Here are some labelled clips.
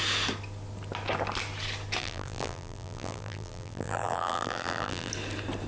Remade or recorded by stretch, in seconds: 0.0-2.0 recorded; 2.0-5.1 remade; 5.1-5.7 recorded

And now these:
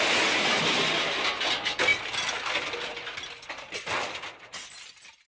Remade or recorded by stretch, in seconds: 0.0-5.4 recorded